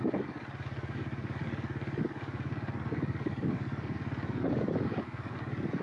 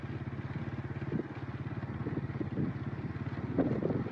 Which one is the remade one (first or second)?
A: first